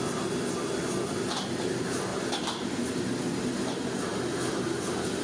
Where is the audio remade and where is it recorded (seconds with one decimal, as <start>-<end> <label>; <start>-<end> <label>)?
0.0-5.2 recorded